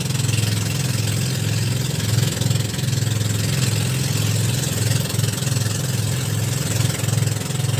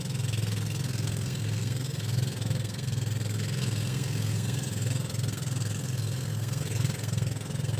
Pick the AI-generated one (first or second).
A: second